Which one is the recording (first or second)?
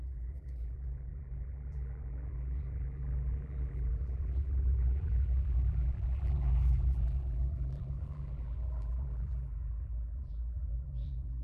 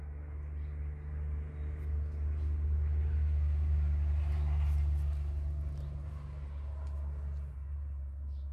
second